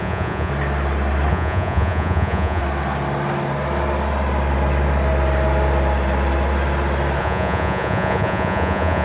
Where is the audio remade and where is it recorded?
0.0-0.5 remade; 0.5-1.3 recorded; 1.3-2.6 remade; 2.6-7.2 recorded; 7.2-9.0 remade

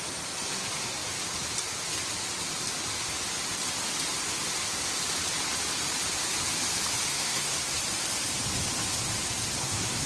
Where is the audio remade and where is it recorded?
0.0-7.1 recorded; 7.1-7.8 remade; 7.8-9.4 recorded; 9.4-10.1 remade

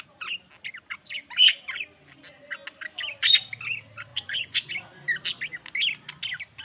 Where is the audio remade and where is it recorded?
0.0-4.1 recorded; 4.1-4.7 remade; 4.7-6.6 recorded

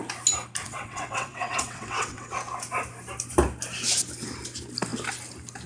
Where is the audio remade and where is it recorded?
0.0-0.6 recorded; 0.6-2.3 remade; 2.3-5.7 recorded

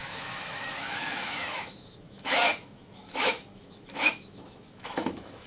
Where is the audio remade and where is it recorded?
0.0-5.5 remade

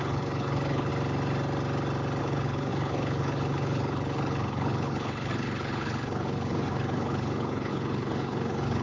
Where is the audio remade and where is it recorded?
0.0-0.9 remade; 0.9-2.2 recorded; 2.2-8.8 remade

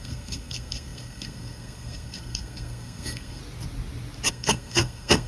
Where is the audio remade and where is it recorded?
0.0-3.4 remade; 3.4-4.3 recorded; 4.3-5.3 remade

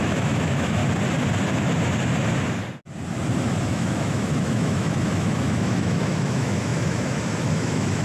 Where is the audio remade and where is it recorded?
0.0-0.8 remade; 0.8-3.7 recorded; 3.7-8.0 remade